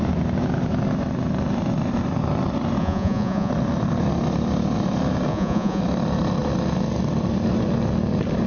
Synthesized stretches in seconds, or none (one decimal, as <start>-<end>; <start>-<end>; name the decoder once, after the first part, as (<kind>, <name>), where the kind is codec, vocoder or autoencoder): 2.8-3.5 (vocoder, Vocos); 5.3-5.8